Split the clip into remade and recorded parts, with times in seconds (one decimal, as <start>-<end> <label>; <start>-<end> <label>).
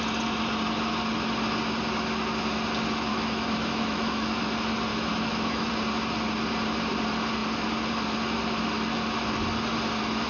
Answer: 0.0-3.1 recorded; 3.1-4.4 remade; 4.4-4.9 recorded; 4.9-5.7 remade; 5.7-10.3 recorded